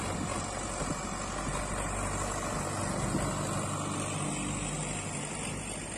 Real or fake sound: real